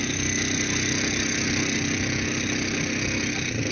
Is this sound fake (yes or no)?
no